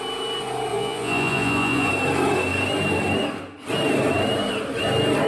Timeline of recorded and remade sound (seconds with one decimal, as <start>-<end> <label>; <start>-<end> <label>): 0.0-0.7 recorded; 0.7-1.9 remade; 1.9-5.3 recorded